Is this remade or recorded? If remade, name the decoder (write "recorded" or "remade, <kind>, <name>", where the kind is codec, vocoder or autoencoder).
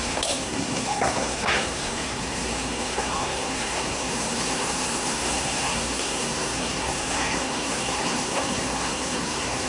remade, codec, SNAC